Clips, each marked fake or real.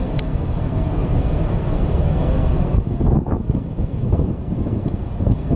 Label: fake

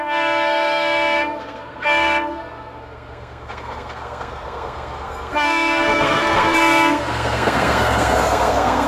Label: fake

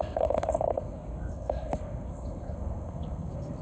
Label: fake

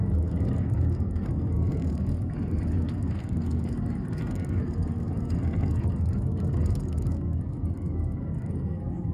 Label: fake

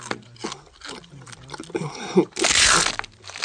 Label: real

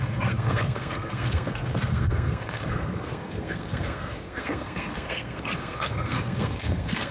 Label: fake